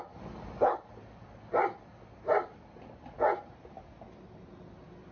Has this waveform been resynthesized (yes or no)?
no